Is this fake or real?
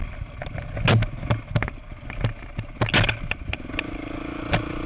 real